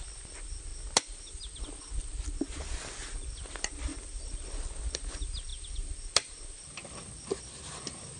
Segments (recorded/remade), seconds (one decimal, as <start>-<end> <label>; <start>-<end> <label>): 0.0-8.2 recorded